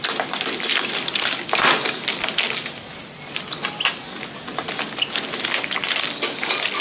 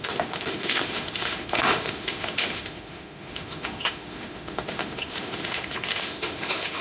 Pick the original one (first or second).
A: first